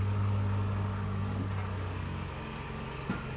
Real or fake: fake